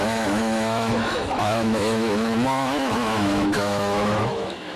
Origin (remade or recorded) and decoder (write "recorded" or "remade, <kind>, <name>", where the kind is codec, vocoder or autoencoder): remade, autoencoder, DAC-VAE